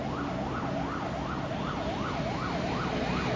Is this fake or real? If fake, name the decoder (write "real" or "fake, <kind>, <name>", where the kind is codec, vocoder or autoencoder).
real